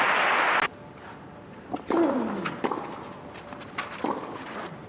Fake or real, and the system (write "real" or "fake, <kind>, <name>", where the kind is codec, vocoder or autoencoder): real